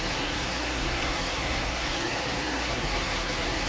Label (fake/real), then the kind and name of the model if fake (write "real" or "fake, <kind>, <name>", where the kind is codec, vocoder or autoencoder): fake, codec, SNAC